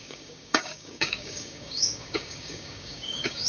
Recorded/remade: remade